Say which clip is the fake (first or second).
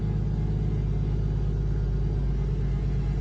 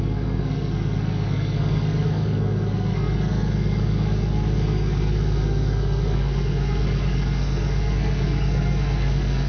second